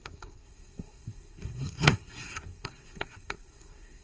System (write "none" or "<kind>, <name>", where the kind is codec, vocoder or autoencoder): codec, SNAC